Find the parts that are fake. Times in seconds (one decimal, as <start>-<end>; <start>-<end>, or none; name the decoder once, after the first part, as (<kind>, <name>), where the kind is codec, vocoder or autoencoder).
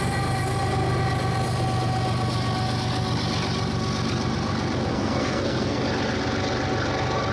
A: 4.9-5.8 (codec, SNAC)